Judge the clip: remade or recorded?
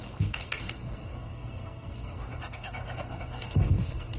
remade